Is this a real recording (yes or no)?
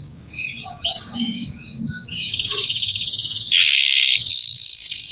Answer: no